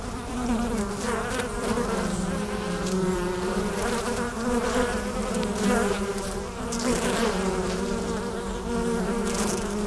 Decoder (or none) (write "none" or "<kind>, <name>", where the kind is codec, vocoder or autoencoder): vocoder, BigVGAN v2